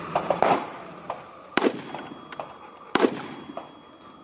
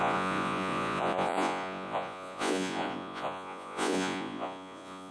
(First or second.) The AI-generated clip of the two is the second